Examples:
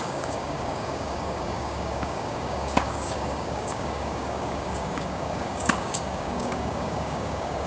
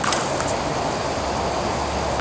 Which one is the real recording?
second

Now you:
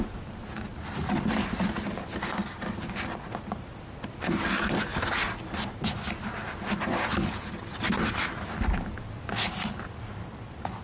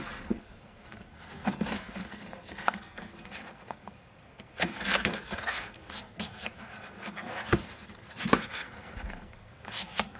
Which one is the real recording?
first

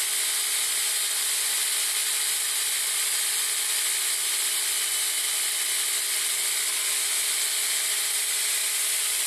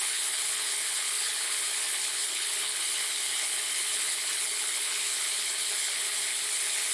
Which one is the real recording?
first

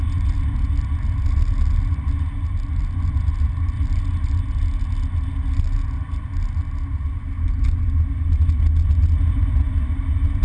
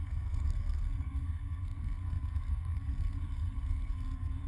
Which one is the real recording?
first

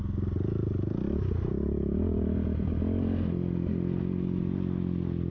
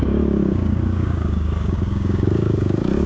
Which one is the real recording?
first